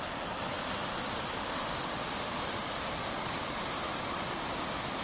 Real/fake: real